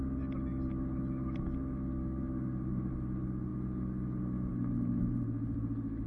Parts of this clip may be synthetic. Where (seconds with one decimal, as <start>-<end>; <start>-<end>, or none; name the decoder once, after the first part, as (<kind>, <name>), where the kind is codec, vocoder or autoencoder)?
none